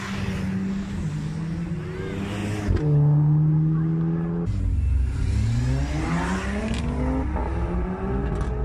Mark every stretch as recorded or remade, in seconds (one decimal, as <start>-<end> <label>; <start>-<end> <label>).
0.0-8.6 recorded